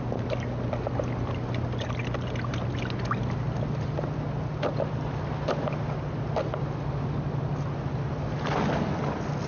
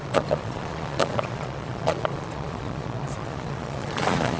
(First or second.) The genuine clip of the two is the first